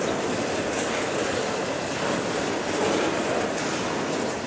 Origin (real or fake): real